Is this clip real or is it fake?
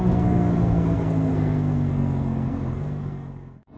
fake